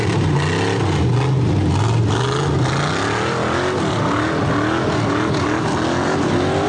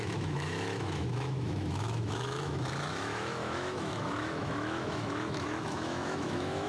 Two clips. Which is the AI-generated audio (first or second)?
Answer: second